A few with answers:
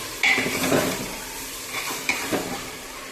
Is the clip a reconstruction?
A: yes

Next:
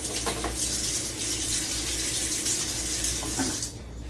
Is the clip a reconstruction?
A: no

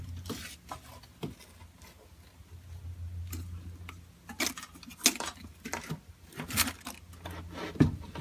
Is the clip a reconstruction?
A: no